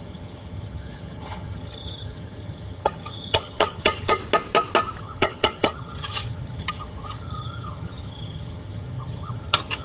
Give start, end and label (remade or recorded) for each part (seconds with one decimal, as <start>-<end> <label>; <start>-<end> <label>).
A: 0.0-4.2 remade; 4.2-5.0 recorded; 5.0-9.8 remade